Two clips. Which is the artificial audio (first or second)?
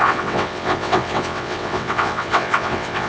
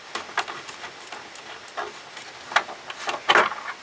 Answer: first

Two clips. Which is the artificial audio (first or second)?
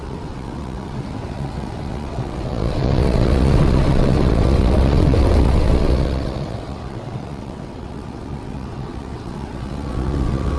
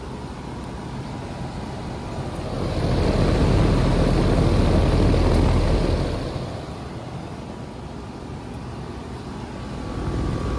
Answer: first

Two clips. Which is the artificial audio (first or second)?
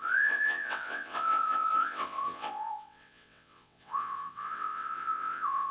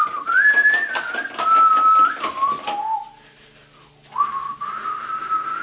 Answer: first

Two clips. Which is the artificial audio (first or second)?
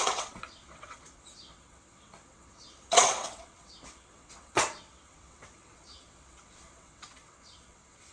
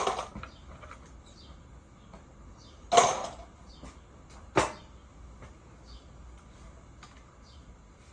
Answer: first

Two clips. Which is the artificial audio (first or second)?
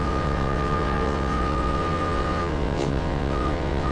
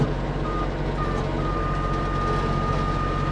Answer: first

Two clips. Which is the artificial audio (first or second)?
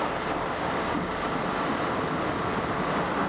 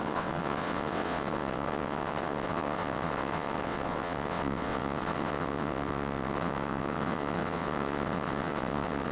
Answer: second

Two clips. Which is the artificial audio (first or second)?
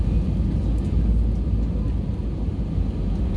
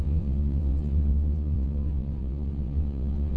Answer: second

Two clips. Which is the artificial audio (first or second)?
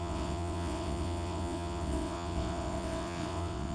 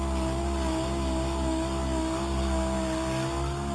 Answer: first